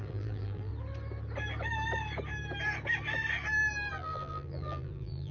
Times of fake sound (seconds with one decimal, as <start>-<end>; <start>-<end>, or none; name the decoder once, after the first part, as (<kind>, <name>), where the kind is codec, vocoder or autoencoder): 0.0-0.7 (vocoder, BigVGAN v2); 3.9-5.3

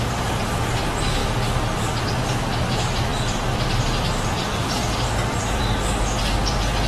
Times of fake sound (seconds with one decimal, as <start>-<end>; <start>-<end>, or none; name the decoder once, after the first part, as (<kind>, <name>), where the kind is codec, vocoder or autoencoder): none

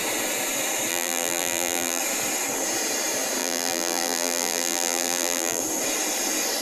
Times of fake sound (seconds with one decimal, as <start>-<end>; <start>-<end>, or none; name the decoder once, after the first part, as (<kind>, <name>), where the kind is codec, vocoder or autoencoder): 0.9-2.0 (vocoder, BigVGAN v2); 3.4-5.6

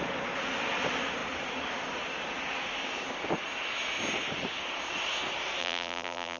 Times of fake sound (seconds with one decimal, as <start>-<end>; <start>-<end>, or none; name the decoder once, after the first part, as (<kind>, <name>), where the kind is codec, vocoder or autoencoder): 5.6-6.4 (vocoder, BigVGAN v2)

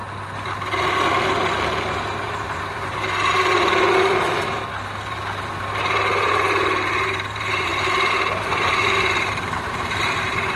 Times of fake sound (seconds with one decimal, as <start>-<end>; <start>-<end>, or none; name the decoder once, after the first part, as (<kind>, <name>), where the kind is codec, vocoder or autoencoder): 2.1-10.6 (vocoder, BigVGAN v2)